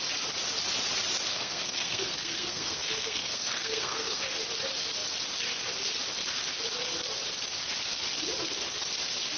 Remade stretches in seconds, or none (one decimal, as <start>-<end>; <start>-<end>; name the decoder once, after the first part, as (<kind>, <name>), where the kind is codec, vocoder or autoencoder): 1.3-4.2 (codec, SNAC)